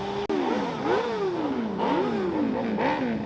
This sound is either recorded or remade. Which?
recorded